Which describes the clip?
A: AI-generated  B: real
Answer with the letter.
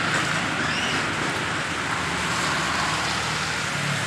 B